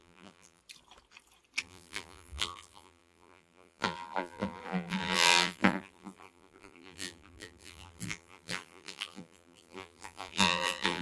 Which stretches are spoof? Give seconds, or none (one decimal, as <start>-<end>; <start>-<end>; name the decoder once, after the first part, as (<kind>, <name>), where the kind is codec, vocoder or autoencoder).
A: 0.0-0.6 (vocoder, BigVGAN v2); 1.6-11.0